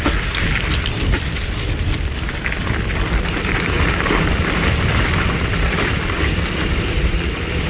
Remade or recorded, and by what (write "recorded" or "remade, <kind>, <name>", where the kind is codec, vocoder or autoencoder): recorded